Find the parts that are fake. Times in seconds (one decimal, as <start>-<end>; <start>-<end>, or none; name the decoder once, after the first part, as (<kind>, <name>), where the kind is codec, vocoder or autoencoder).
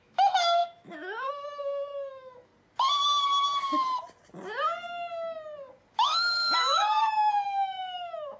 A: 0.0-2.5 (autoencoder, DAC-VAE); 5.9-8.4